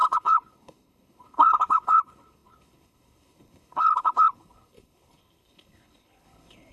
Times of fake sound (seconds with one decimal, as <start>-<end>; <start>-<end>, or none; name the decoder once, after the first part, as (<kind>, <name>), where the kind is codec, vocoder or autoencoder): 0.0-6.7 (codec, HILCodec)